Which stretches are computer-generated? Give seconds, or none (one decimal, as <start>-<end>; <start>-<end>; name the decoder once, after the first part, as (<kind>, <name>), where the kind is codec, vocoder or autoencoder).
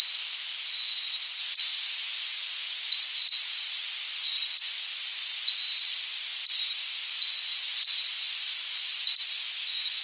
7.7-9.5 (vocoder, BigVGAN v2)